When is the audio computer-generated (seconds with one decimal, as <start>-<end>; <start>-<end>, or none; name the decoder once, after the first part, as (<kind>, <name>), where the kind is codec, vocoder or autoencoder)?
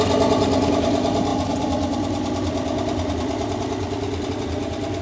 1.3-4.3 (vocoder, BigVGAN v2)